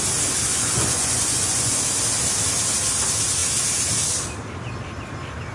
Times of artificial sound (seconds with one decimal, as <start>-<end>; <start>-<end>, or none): 0.5-1.8